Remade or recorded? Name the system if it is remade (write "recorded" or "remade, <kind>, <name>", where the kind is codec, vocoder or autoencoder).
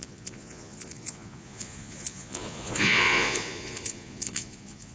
remade, vocoder, Vocos